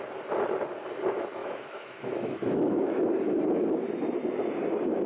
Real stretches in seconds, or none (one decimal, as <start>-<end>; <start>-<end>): 0.0-1.4; 3.1-5.1